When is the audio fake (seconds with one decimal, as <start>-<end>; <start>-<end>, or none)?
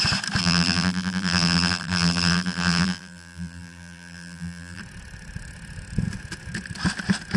0.4-4.8